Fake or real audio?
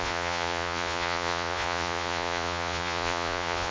fake